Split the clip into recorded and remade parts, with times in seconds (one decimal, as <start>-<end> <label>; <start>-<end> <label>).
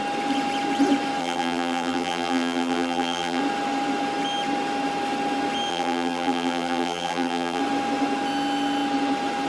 0.0-1.2 recorded; 1.2-3.4 remade; 3.4-5.7 recorded; 5.7-7.6 remade; 7.6-9.5 recorded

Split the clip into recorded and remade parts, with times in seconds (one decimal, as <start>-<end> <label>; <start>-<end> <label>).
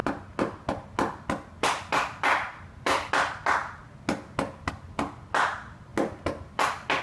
0.0-7.0 recorded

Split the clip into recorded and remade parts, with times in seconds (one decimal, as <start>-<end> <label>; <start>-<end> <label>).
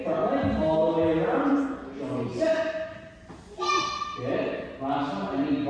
0.0-5.7 recorded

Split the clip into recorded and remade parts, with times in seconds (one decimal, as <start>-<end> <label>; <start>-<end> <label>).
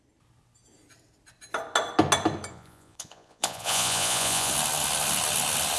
0.0-2.5 recorded; 2.5-4.5 remade; 4.5-5.8 recorded